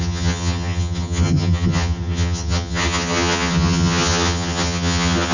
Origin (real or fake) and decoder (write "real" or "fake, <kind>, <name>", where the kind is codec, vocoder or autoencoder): fake, vocoder, HiFi-GAN